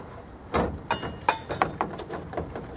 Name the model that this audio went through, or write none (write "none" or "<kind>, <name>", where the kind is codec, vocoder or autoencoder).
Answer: none